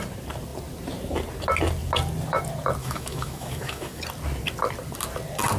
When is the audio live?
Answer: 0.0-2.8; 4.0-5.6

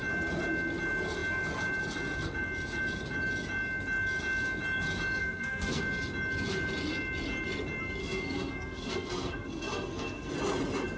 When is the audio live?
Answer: 0.0-5.2; 5.8-8.0; 10.3-11.0

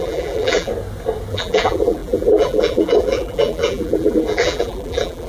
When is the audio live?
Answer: 0.7-1.3

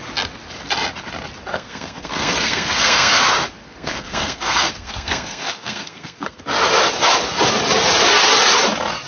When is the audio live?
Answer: 0.0-1.5; 3.2-3.6; 6.4-9.1